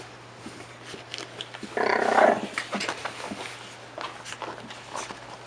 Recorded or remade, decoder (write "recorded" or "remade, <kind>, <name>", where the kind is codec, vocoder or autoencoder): recorded